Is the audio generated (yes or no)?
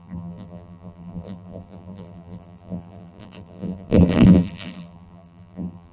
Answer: yes